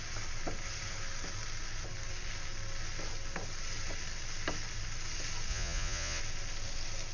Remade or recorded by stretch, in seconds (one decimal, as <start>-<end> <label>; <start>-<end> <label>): 0.0-5.5 recorded; 5.5-6.2 remade; 6.2-7.1 recorded

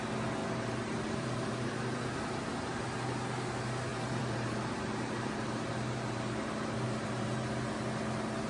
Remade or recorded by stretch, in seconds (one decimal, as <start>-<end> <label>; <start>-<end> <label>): 0.0-0.4 recorded; 0.4-1.7 remade; 1.7-3.9 recorded; 3.9-7.5 remade; 7.5-8.5 recorded

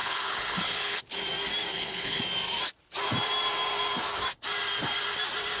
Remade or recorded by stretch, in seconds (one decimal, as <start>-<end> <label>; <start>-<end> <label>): 0.0-1.0 remade; 1.0-1.7 recorded; 1.7-2.2 remade; 2.2-5.6 recorded

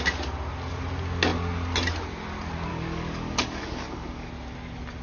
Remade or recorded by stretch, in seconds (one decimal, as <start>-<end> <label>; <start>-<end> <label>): 0.0-2.7 recorded; 2.7-4.3 remade; 4.3-5.0 recorded